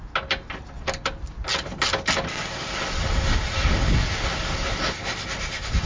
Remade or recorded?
recorded